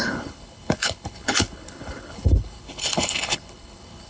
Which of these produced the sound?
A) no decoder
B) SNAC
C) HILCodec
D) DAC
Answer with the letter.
C